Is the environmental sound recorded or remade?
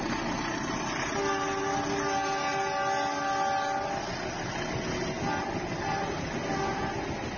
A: recorded